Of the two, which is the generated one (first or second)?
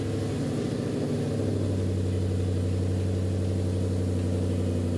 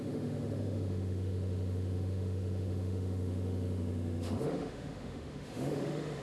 second